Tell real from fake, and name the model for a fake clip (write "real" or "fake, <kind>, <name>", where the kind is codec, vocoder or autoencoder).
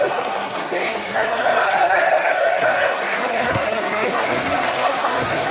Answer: fake, codec, SNAC